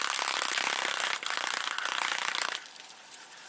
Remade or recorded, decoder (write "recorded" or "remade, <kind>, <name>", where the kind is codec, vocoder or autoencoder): recorded